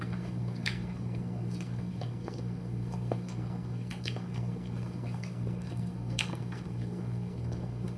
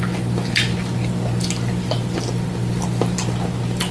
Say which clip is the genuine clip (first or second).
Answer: second